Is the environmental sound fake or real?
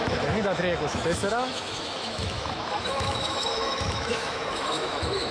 fake